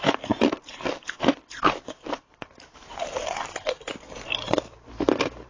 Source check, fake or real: fake